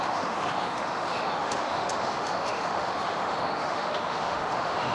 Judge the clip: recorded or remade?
remade